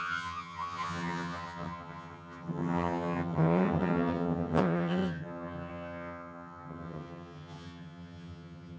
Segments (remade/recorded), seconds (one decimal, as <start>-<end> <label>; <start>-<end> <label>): 0.0-8.8 remade